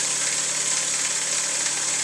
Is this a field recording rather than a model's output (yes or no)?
yes